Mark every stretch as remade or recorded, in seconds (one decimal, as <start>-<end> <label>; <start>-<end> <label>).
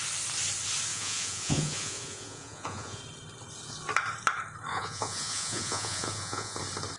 0.0-0.9 recorded; 0.9-3.0 remade; 3.0-4.7 recorded; 4.7-6.6 remade; 6.6-7.0 recorded